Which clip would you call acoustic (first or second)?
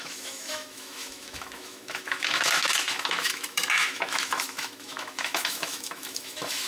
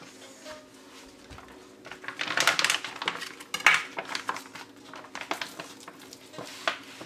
second